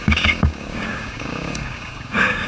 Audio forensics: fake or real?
fake